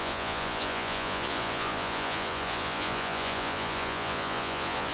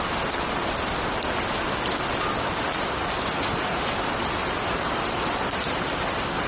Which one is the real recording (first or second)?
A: second